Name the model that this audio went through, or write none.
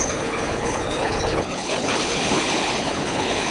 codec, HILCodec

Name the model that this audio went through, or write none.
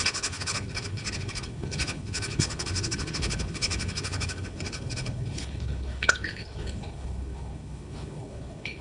codec, HILCodec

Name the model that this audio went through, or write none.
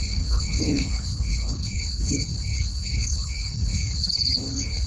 codec, HILCodec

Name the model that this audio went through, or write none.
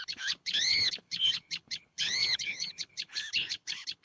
codec, HILCodec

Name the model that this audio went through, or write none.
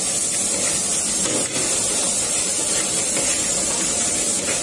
none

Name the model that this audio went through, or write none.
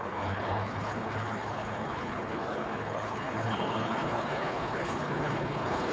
codec, HILCodec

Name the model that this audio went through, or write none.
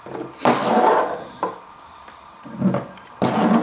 none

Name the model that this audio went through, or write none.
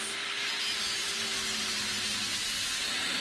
none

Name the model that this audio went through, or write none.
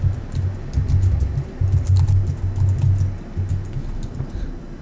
none